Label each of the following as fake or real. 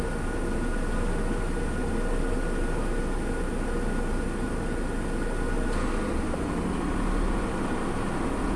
real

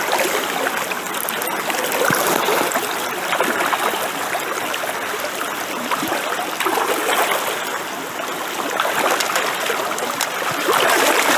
real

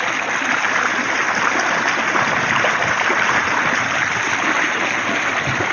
real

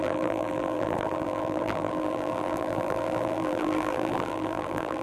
fake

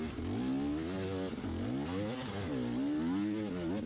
real